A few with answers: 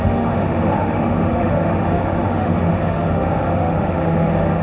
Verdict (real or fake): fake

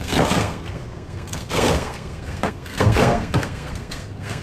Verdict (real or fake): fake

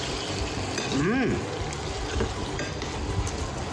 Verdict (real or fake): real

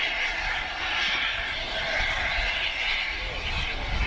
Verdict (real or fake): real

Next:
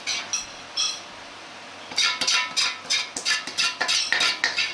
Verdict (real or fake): real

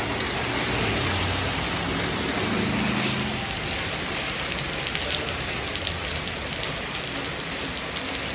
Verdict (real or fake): real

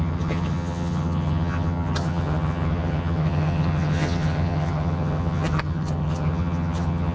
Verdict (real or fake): fake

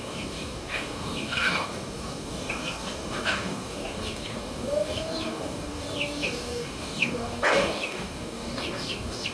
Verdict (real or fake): fake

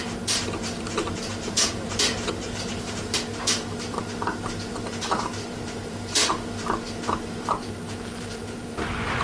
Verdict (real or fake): fake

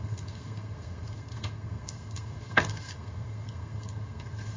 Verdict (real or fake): fake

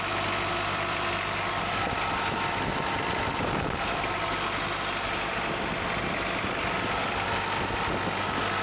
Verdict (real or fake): real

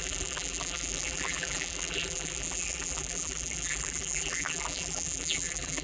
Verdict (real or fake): fake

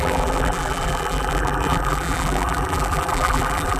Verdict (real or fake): fake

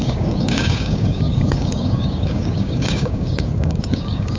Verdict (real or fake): fake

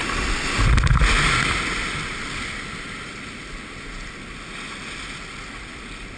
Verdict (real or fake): real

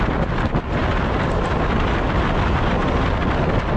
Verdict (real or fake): real